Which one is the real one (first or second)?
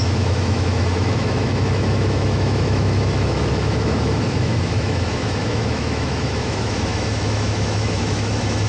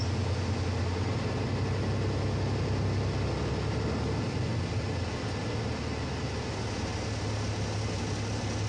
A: second